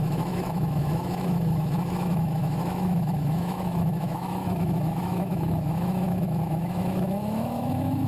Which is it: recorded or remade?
remade